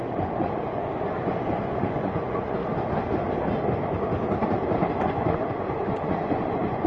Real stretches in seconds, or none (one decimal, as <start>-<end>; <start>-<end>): 2.6-4.9